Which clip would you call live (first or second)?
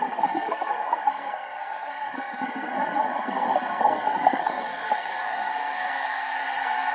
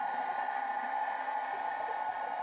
second